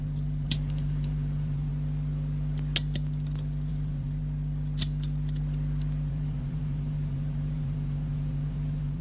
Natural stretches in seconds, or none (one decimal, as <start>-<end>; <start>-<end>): 1.7-3.7; 4.2-6.1